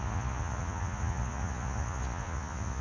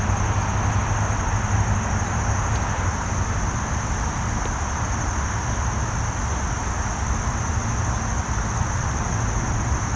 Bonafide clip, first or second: second